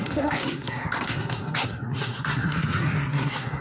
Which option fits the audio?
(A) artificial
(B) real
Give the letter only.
A